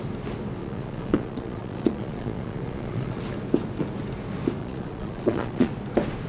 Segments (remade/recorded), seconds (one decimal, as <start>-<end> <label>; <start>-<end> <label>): 0.0-0.6 recorded; 0.6-3.2 remade; 3.2-4.6 recorded; 4.6-5.7 remade; 5.7-6.3 recorded